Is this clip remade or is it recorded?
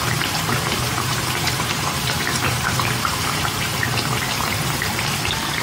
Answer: remade